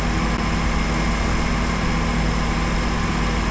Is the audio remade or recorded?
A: recorded